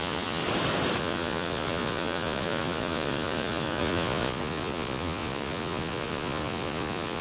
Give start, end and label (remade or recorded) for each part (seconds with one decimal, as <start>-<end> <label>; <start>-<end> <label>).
0.0-0.4 remade; 0.4-1.0 recorded; 1.0-7.2 remade